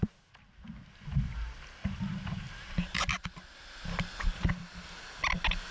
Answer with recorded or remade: recorded